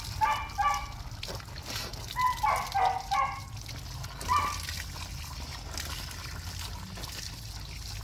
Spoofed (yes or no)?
no